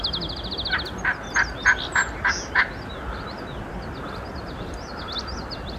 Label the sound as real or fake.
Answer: real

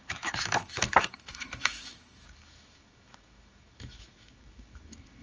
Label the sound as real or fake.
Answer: fake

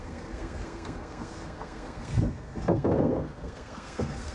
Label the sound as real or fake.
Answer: fake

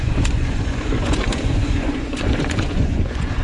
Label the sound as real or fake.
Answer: fake